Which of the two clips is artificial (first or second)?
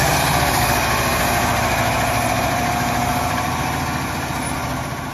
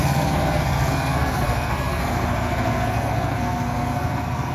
second